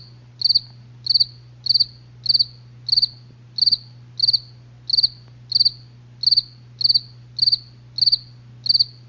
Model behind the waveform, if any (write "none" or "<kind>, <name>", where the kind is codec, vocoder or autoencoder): none